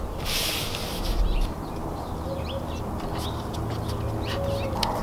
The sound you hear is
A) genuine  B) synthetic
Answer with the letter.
A